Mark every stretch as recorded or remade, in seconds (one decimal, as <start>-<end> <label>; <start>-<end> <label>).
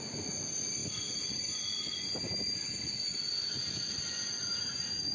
0.0-5.1 recorded